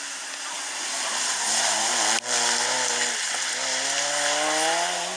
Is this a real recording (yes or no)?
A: yes